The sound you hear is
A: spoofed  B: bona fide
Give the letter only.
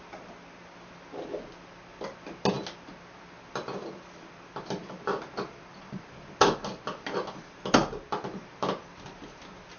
B